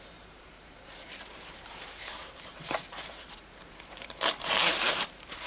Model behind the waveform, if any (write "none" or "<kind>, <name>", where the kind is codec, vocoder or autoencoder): vocoder, BigVGAN v2